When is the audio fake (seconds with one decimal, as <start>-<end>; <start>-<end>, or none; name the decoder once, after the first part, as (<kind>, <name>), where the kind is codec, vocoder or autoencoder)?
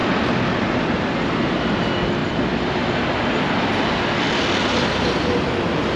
none